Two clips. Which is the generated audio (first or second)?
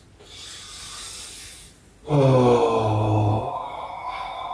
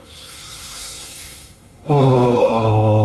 second